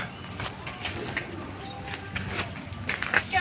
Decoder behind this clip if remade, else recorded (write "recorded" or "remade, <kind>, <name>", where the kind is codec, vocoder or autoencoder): recorded